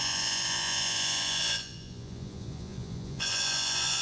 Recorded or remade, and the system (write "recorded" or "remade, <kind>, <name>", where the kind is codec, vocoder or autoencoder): remade, vocoder, Vocos